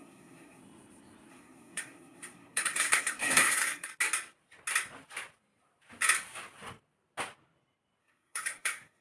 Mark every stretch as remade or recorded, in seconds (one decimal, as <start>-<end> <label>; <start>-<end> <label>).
0.0-0.6 remade; 0.6-1.3 recorded; 1.3-3.9 remade; 3.9-8.0 recorded; 8.0-9.0 remade